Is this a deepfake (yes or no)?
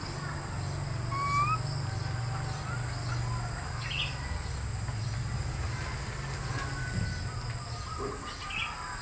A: no